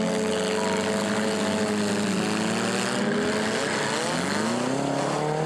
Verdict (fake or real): real